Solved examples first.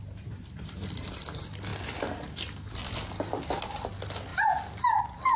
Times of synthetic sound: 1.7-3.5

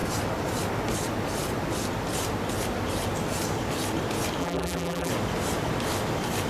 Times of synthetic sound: 4.4-5.1

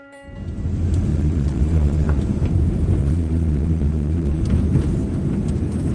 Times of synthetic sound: 1.1-2.2; 3.0-4.4